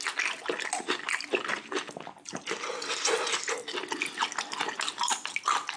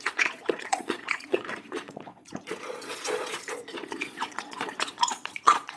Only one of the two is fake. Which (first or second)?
second